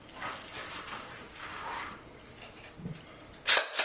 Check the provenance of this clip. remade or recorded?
recorded